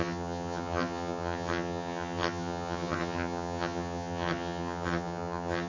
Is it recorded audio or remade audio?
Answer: remade